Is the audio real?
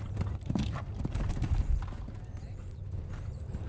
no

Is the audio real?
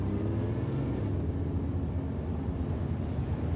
yes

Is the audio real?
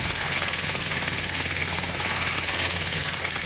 no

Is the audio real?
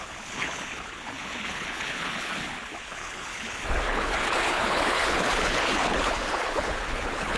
no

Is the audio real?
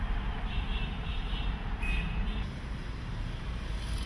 no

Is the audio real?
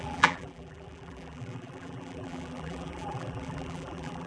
no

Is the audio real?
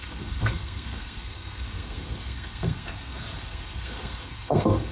no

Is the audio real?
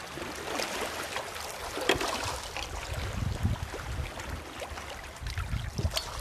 yes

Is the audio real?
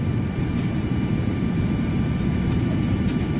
no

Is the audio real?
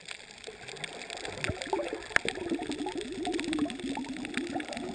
yes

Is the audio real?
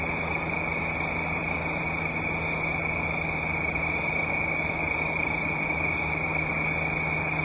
yes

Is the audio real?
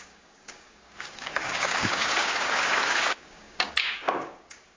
no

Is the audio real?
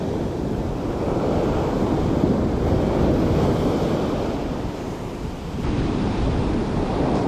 yes